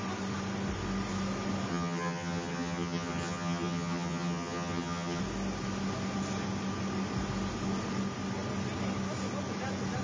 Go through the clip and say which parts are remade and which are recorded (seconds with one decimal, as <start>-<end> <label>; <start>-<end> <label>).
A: 0.0-1.7 recorded; 1.7-5.2 remade; 5.2-10.0 recorded